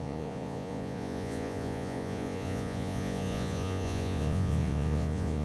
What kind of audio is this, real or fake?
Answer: fake